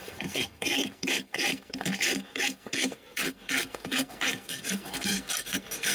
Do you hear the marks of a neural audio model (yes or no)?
yes